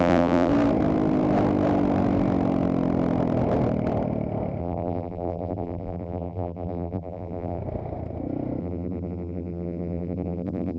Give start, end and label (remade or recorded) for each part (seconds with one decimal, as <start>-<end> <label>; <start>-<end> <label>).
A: 0.0-0.5 remade; 0.5-4.6 recorded; 4.6-7.6 remade; 7.6-8.6 recorded; 8.6-10.8 remade